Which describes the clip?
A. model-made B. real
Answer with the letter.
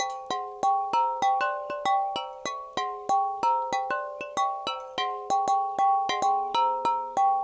B